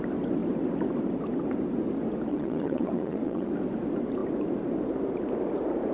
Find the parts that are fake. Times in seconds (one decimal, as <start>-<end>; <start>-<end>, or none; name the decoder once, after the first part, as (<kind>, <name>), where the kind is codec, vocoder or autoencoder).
2.3-3.5 (vocoder, WaveNeXt)